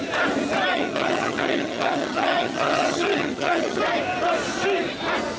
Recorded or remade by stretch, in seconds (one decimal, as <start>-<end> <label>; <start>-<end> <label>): 0.0-0.7 recorded; 0.7-3.8 remade; 3.8-5.4 recorded